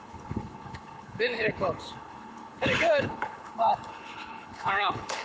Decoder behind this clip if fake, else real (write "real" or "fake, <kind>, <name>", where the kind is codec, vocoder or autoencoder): fake, codec, HILCodec